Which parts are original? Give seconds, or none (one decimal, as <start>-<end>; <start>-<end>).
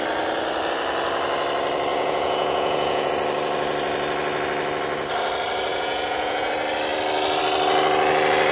0.0-1.9; 3.1-5.7; 6.5-8.5